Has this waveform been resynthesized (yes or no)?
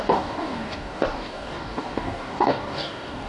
yes